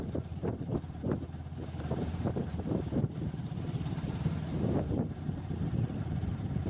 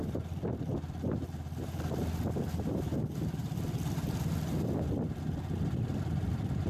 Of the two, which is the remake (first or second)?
first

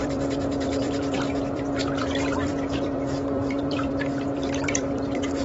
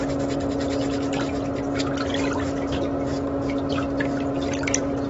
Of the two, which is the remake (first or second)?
first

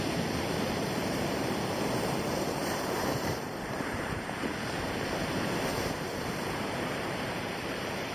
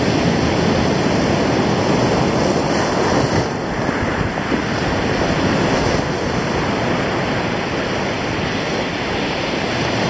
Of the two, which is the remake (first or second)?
first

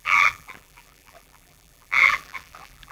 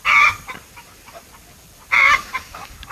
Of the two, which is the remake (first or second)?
first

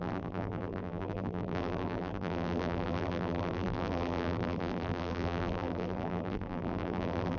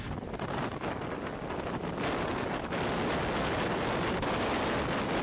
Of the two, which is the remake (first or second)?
first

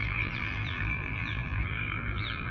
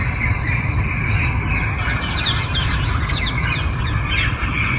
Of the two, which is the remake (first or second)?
first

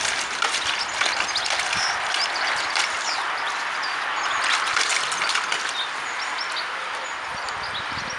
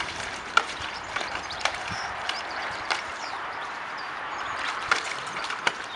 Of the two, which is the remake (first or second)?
second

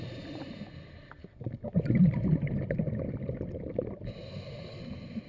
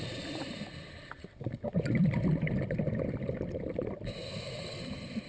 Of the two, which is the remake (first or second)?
second